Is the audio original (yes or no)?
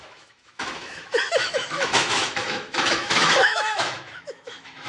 no